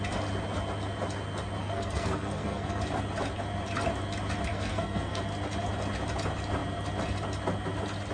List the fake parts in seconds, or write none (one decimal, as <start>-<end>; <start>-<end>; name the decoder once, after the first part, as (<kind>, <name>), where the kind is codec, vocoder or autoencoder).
1.6-2.8 (codec, SNAC); 4.5-5.2